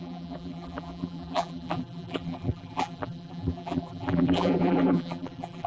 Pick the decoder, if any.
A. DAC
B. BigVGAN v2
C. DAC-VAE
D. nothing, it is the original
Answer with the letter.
B